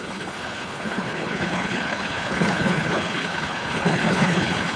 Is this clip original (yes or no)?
no